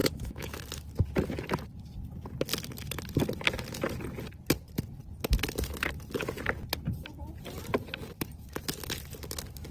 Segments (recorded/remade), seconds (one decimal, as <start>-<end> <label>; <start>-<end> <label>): 0.0-0.6 remade; 0.6-9.7 recorded